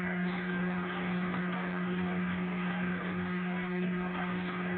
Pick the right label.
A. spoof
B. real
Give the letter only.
A